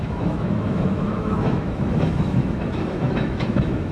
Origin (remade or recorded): remade